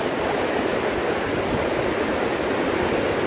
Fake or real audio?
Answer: real